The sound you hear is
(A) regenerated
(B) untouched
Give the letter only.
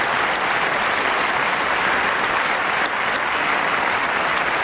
B